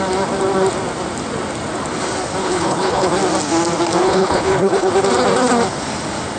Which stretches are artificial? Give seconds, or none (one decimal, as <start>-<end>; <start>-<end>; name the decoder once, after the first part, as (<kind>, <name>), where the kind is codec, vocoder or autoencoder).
2.4-3.1 (codec, HILCodec); 4.0-4.9